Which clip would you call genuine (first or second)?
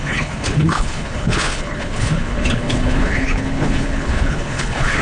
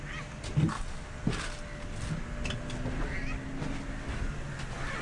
second